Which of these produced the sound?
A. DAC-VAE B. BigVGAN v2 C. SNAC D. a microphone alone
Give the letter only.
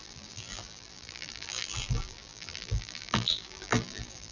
B